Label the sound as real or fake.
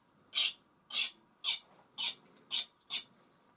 real